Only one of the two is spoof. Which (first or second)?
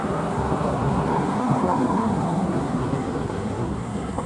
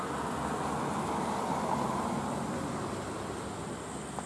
first